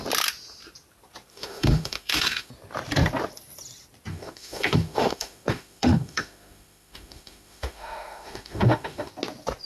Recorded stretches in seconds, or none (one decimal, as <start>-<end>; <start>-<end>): 0.0-1.3; 2.5-4.1; 9.1-9.6